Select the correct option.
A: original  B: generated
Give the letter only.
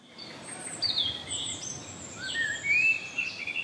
A